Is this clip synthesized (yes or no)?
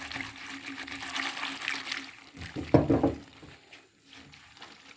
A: no